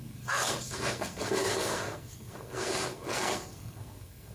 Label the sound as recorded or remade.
remade